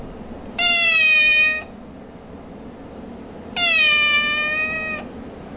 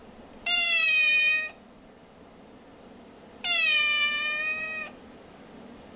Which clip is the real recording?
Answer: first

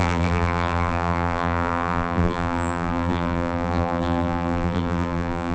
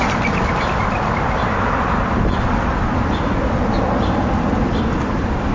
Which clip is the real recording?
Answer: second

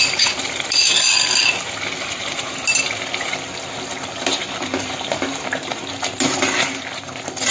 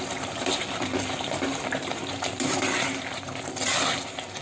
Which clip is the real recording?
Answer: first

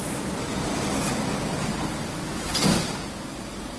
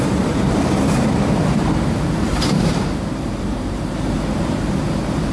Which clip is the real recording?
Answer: first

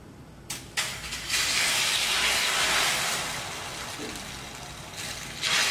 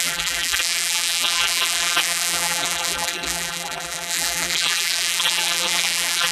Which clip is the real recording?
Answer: first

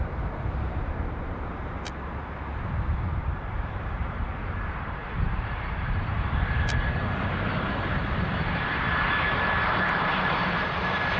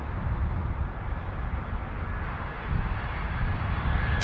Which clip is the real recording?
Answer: second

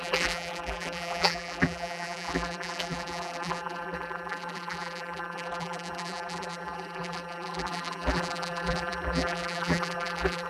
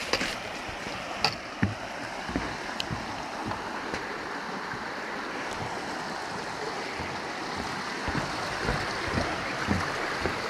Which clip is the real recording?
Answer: second